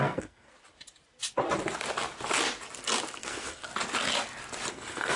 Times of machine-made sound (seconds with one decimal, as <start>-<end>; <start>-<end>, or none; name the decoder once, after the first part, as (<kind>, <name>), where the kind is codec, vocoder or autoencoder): 0.0-0.5 (codec, SNAC); 3.2-3.7; 4.7-5.2